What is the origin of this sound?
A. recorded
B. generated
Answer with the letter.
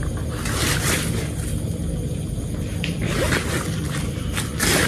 B